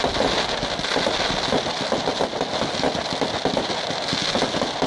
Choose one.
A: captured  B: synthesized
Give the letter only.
A